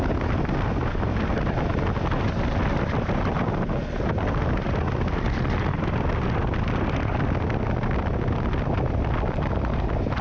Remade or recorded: recorded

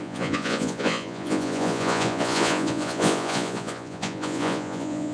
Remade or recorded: remade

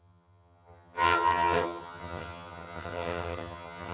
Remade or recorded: remade